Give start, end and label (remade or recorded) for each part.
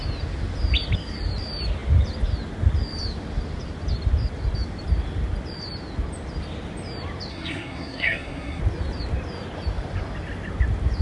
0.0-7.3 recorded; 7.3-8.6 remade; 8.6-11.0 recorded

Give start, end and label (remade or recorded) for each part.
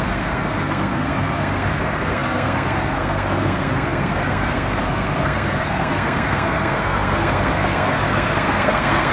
0.0-9.1 remade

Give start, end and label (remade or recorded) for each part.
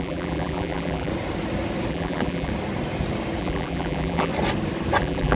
0.0-1.1 remade; 1.1-1.9 recorded; 1.9-2.5 remade; 2.5-3.4 recorded; 3.4-4.3 remade; 4.3-5.0 recorded; 5.0-5.4 remade